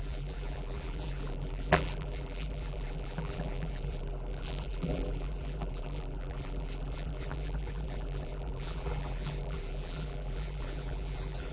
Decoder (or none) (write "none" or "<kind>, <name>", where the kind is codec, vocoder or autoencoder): vocoder, BigVGAN v2